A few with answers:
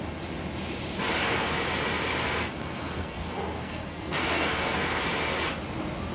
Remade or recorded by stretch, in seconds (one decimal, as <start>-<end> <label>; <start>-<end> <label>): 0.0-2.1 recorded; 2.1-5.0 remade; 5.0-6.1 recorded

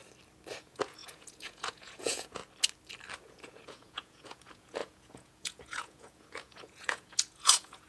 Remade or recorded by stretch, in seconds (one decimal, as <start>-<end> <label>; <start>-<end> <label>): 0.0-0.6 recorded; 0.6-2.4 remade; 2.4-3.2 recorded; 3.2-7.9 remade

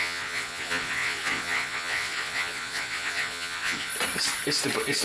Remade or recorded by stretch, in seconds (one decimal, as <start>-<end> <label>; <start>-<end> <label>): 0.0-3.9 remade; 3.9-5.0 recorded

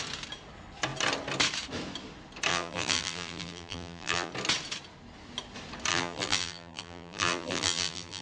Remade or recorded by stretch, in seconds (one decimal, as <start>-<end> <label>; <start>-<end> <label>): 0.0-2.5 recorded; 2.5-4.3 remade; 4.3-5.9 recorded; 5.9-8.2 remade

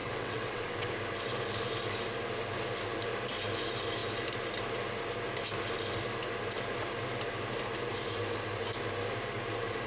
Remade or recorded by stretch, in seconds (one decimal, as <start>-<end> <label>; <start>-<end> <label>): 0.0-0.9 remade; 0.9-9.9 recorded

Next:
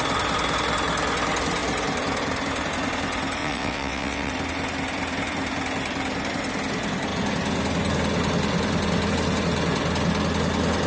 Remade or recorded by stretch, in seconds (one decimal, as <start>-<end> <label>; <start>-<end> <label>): 0.0-3.4 recorded; 3.4-4.3 remade; 4.3-10.9 recorded

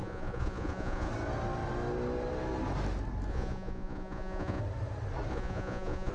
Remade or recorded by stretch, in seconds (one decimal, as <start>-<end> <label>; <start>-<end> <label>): 0.0-1.1 remade; 1.1-3.3 recorded; 3.3-4.6 remade; 4.6-5.3 recorded; 5.3-6.1 remade

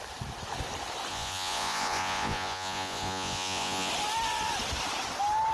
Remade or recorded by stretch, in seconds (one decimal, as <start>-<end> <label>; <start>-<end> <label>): 0.0-1.1 recorded; 1.1-3.9 remade; 3.9-5.5 recorded